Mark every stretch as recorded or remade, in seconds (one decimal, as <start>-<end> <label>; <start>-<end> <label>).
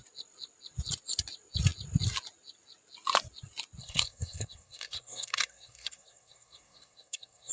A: 0.0-3.8 recorded; 3.8-7.5 remade